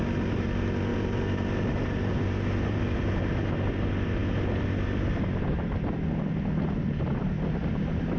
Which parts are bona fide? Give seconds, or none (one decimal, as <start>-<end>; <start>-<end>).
0.0-0.9; 2.8-8.2